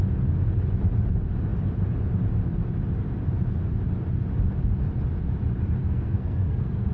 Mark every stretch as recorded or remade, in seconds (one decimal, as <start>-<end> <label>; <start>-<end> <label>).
0.0-5.8 recorded; 5.8-6.9 remade